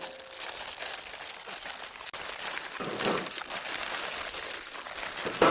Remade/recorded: recorded